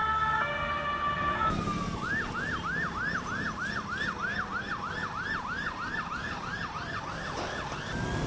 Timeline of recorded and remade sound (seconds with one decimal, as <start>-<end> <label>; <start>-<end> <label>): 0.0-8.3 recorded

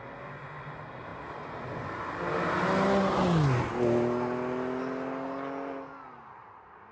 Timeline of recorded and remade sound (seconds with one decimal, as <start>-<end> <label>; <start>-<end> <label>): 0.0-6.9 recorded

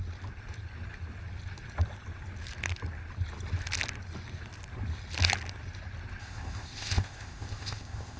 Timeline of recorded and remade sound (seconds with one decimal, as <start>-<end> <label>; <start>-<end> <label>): 0.0-6.2 recorded; 6.2-8.2 remade

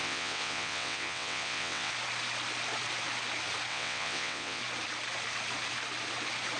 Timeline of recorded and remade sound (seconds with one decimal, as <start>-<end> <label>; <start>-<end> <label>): 0.0-1.9 remade; 1.9-3.7 recorded; 3.7-4.6 remade; 4.6-6.6 recorded

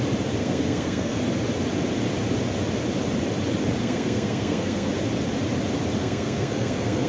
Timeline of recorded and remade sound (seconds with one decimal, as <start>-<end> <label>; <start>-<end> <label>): 0.0-0.4 recorded; 0.4-1.2 remade; 1.2-3.8 recorded; 3.8-4.9 remade; 4.9-6.0 recorded; 6.0-7.1 remade

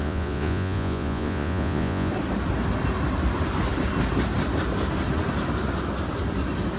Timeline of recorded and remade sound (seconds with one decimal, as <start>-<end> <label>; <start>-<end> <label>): 0.0-2.1 remade; 2.1-6.8 recorded

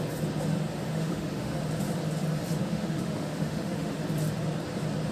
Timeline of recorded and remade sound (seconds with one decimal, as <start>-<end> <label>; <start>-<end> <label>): 0.0-0.9 recorded; 0.9-1.6 remade; 1.6-2.6 recorded; 2.6-3.9 remade; 3.9-5.1 recorded

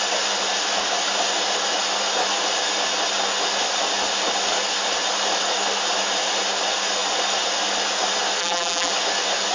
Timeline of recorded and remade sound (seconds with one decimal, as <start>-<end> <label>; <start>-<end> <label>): 0.0-8.4 recorded; 8.4-8.9 remade; 8.9-9.5 recorded